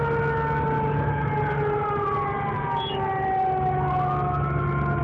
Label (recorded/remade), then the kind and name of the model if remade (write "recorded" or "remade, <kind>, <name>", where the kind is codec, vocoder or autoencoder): recorded